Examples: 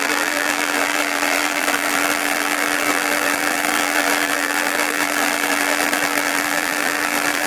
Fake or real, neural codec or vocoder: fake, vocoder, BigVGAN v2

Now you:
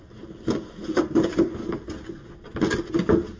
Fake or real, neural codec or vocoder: real